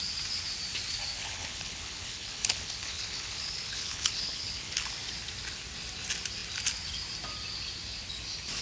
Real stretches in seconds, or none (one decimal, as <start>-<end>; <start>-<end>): 0.0-1.2; 4.8-8.6